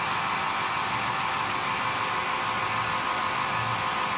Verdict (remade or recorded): recorded